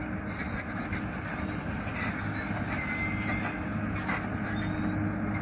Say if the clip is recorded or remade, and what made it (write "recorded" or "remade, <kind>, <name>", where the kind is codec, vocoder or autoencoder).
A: recorded